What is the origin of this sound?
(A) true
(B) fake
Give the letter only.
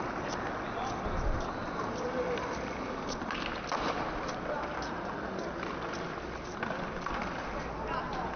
A